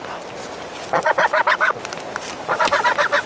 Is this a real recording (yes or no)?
yes